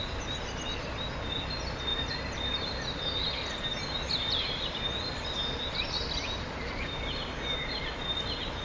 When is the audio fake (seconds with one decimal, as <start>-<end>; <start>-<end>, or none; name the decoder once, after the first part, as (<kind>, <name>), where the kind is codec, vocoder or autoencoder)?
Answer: none